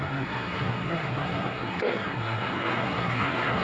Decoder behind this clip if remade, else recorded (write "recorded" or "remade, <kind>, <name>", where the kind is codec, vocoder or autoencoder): remade, codec, SNAC